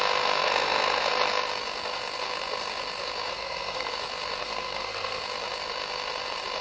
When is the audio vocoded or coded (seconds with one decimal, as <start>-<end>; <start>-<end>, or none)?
0.4-1.1; 3.3-3.9; 4.4-5.2